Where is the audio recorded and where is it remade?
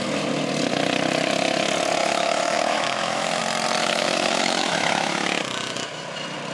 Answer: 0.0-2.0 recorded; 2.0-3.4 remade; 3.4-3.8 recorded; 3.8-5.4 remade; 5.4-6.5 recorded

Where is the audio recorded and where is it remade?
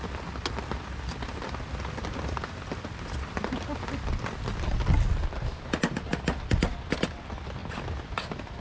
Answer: 0.0-8.6 recorded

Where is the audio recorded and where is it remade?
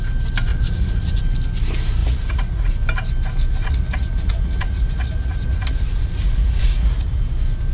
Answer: 0.0-0.5 recorded; 0.5-1.2 remade; 1.2-2.0 recorded; 2.0-2.7 remade; 2.7-3.5 recorded; 3.5-7.2 remade; 7.2-7.7 recorded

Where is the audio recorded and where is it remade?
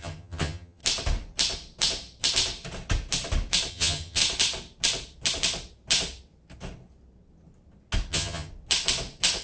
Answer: 0.0-0.8 remade; 0.8-3.7 recorded; 3.7-4.2 remade; 4.2-8.1 recorded; 8.1-8.5 remade; 8.5-9.4 recorded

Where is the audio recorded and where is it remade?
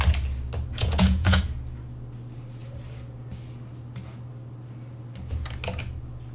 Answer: 0.0-0.7 recorded; 0.7-1.4 remade; 1.4-6.3 recorded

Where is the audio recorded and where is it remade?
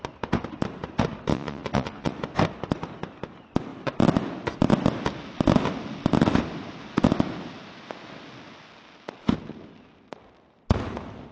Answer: 0.0-1.3 recorded; 1.3-2.1 remade; 2.1-11.3 recorded